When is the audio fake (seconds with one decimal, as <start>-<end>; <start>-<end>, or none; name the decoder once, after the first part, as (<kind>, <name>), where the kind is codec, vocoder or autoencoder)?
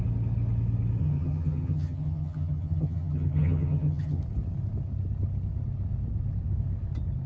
1.0-4.2 (vocoder, HiFi-GAN)